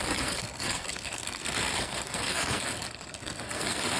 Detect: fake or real fake